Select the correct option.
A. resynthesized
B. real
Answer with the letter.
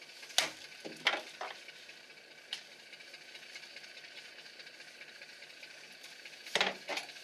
B